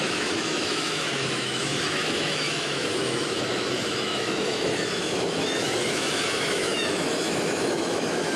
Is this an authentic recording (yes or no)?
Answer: no